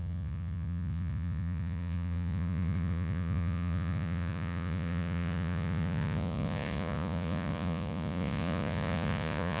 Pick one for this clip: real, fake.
fake